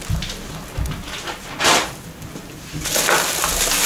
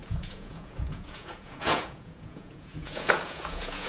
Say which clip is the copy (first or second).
second